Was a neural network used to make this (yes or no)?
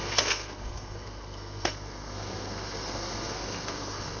yes